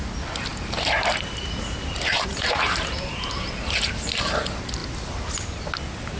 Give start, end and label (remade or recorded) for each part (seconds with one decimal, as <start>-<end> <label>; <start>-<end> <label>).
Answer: 0.0-2.3 recorded; 2.3-3.5 remade; 3.5-6.2 recorded